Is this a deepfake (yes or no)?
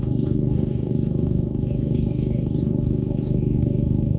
yes